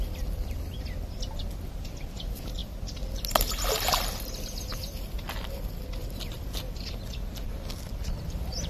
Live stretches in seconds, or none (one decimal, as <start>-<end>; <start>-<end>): 0.0-4.7